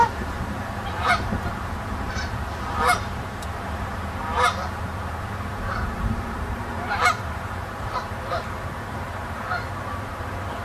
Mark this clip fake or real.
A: fake